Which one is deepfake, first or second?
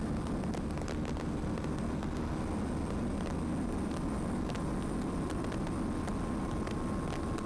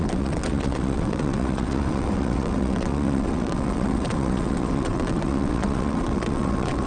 second